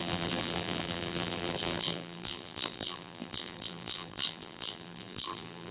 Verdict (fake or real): fake